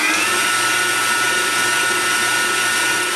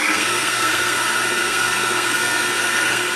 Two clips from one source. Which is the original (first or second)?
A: first